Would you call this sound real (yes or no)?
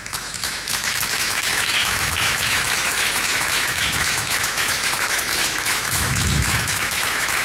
no